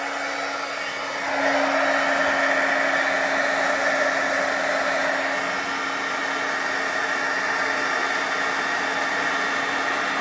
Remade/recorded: recorded